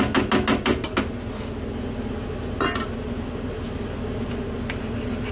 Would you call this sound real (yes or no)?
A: yes